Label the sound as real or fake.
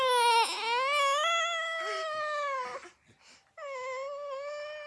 real